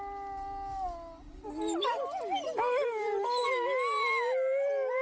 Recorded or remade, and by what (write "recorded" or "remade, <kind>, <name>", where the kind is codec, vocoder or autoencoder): recorded